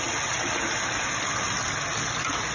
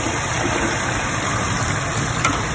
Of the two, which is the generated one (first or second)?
second